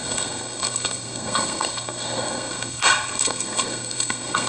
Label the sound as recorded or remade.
remade